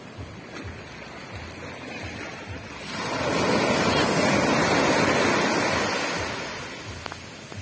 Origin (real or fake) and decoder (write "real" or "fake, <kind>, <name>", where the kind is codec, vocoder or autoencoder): real